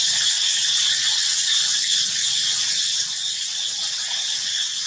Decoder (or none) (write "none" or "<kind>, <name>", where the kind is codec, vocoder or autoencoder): vocoder, WaveNeXt